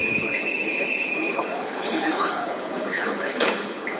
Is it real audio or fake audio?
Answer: fake